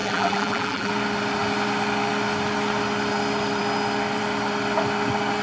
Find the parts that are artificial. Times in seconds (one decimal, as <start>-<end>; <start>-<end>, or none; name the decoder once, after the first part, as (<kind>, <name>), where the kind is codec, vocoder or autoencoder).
0.0-0.9 (vocoder, BigVGAN v2)